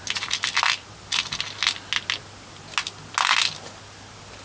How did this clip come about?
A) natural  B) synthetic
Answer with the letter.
A